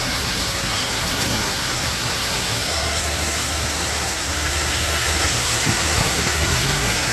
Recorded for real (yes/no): no